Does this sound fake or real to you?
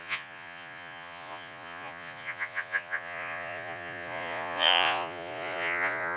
fake